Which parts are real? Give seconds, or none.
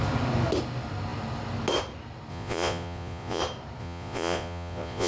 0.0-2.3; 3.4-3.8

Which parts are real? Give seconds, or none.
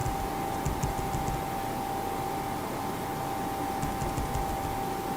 0.0-5.2